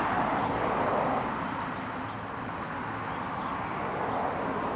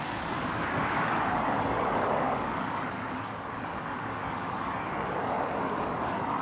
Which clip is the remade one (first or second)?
second